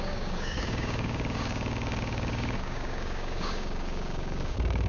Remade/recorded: remade